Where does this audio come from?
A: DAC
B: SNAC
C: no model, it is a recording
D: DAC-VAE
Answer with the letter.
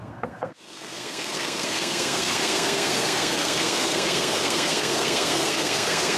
B